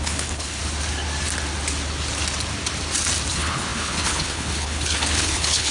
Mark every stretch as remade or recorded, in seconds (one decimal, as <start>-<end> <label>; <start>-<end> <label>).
0.0-0.6 remade; 0.6-3.3 recorded; 3.3-5.7 remade